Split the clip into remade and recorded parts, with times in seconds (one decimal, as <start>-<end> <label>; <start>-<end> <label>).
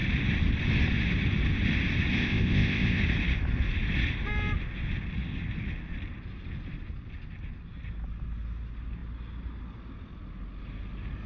0.0-2.1 recorded; 2.1-3.0 remade; 3.0-11.3 recorded